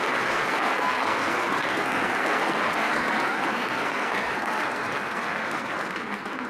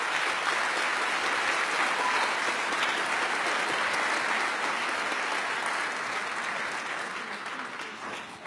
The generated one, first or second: first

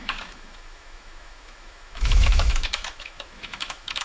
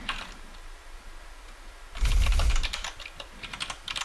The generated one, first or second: first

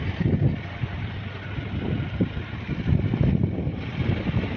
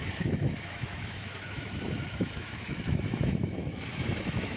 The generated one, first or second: second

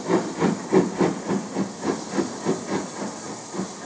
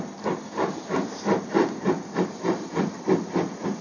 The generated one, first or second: second